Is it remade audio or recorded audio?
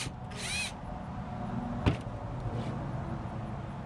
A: recorded